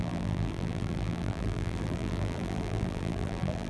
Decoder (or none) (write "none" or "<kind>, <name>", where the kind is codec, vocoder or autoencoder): vocoder, BigVGAN v2